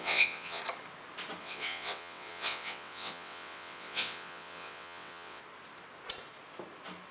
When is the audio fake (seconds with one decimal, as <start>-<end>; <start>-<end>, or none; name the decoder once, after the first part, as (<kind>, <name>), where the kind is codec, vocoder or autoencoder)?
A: 0.0-0.6 (vocoder, WaveNeXt); 1.4-5.4